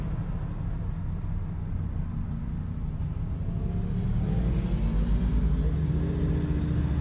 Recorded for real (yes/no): yes